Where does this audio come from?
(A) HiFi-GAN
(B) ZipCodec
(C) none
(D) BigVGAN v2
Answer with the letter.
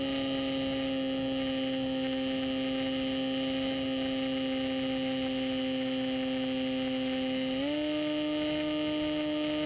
C